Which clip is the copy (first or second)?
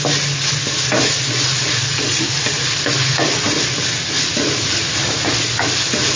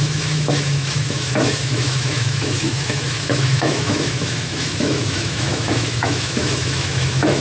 second